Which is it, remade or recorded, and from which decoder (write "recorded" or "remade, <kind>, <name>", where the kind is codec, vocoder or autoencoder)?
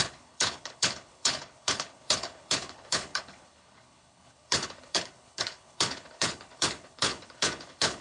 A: remade, codec, HILCodec